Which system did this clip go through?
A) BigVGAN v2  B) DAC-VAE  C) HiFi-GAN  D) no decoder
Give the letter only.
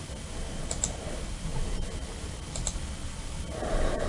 D